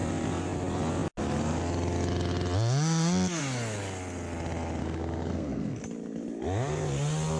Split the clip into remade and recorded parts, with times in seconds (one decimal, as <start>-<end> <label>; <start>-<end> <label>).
0.0-4.8 recorded; 4.8-5.8 remade; 5.8-7.4 recorded

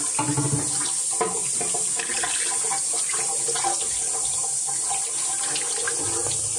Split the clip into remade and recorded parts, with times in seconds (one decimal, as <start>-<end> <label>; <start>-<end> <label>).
0.0-6.6 recorded

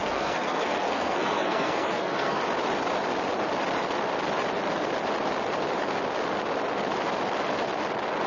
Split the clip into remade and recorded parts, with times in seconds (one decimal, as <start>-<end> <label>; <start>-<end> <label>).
0.0-2.4 remade; 2.4-8.3 recorded